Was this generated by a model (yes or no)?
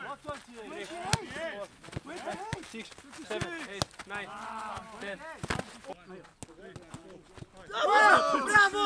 no